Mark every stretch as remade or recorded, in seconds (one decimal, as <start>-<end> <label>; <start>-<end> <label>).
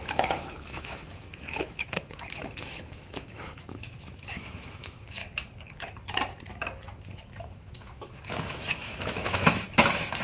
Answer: 0.0-5.2 remade; 5.2-7.4 recorded; 7.4-10.2 remade